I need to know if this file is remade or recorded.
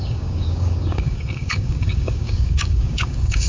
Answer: remade